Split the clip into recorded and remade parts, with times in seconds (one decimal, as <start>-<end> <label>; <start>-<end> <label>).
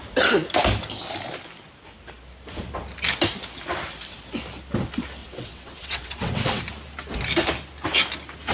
0.0-5.2 recorded; 5.2-6.6 remade; 6.6-8.5 recorded